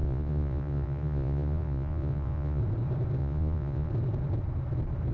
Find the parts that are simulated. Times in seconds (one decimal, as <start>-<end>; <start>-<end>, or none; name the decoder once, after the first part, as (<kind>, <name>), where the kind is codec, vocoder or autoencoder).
0.0-2.6 (vocoder, Vocos); 3.2-3.9